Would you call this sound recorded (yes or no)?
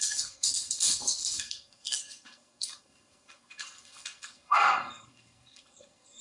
no